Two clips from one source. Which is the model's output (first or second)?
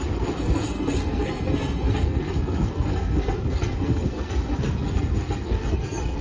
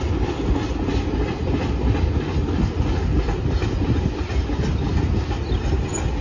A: first